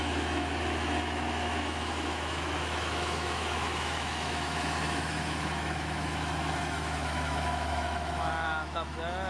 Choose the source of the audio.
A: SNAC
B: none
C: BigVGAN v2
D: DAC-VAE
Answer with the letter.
D